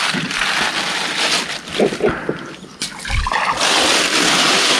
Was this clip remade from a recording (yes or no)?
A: no